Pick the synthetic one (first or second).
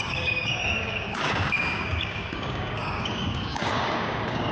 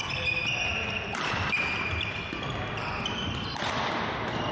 first